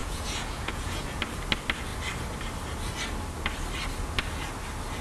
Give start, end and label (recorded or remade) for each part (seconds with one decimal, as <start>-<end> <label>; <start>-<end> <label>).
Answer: 0.0-1.2 remade; 1.2-5.0 recorded